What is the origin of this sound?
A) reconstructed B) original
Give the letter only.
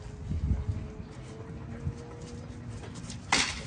B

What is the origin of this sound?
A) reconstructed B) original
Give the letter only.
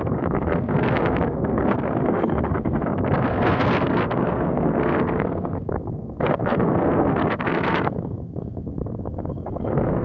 A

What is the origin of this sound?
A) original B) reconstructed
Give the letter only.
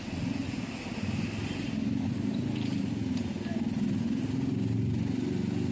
A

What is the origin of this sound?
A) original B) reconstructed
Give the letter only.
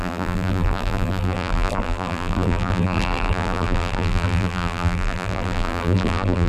B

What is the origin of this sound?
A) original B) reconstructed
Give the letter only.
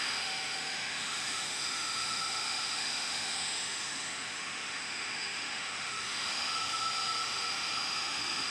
B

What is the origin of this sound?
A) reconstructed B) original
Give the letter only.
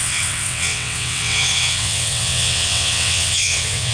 A